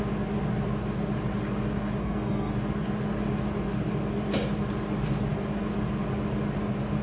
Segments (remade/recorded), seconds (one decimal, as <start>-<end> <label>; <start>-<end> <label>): 0.0-2.0 recorded; 2.0-2.5 remade; 2.5-7.0 recorded